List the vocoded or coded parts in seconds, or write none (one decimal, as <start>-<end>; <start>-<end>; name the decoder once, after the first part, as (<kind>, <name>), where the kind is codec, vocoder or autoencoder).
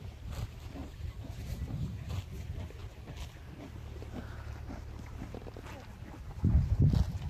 0.8-2.1 (vocoder, BigVGAN v2)